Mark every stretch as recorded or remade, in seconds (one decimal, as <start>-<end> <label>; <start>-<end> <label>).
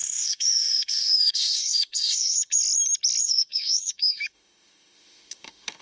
0.0-2.6 remade; 2.6-3.2 recorded; 3.2-5.8 remade